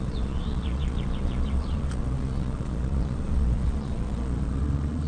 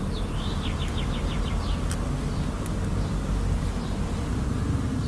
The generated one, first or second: first